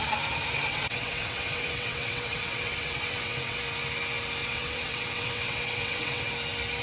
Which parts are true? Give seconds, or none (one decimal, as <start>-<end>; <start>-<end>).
0.0-0.7; 3.6-4.4; 6.3-6.8